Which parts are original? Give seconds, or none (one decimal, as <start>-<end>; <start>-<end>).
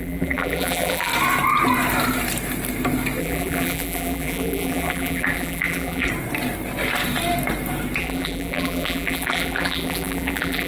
1.1-3.2; 6.1-8.0